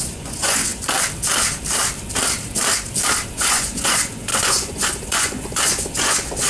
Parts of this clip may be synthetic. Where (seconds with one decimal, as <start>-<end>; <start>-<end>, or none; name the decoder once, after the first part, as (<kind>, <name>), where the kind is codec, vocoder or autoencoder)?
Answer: 0.0-0.7 (vocoder, Vocos); 3.3-6.5